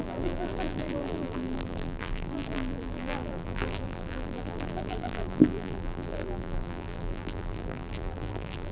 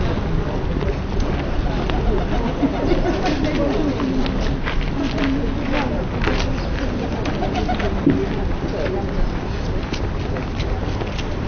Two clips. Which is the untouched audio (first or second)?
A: second